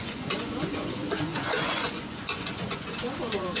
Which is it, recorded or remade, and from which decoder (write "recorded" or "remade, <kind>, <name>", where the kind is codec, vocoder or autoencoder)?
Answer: remade, vocoder, Vocos